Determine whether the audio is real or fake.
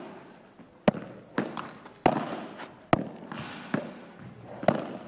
real